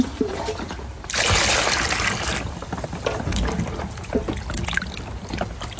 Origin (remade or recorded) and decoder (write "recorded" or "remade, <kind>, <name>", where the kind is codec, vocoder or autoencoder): recorded